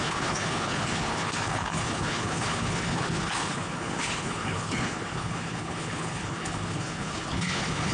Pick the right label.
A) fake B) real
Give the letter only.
A